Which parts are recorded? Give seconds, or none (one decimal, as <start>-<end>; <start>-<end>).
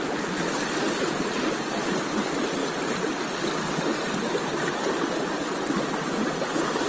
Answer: 0.0-6.9